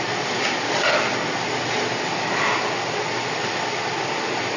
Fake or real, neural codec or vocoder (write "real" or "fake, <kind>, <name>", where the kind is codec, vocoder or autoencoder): real